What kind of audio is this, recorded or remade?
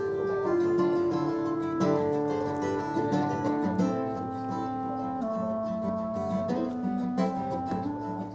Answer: recorded